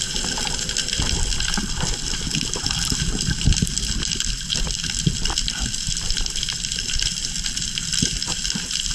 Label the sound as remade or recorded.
remade